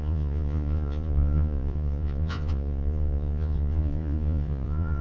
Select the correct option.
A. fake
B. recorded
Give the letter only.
A